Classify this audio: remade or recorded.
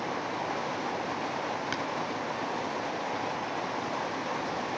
recorded